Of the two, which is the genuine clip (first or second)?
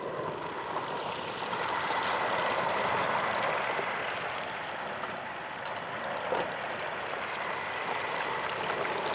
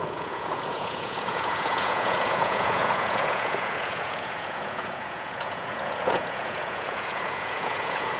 first